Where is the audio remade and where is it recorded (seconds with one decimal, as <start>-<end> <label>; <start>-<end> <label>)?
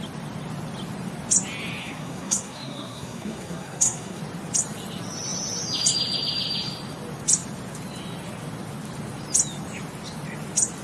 0.0-1.8 recorded; 1.8-4.2 remade; 4.2-10.8 recorded